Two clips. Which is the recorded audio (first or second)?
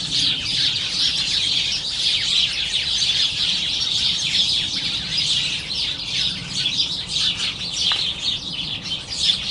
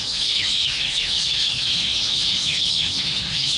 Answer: first